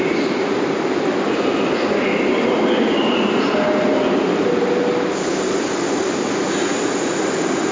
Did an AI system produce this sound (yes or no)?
no